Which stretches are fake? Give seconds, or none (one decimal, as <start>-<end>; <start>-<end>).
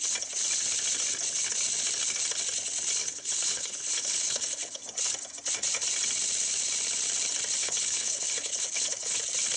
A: 3.0-4.8; 7.6-9.2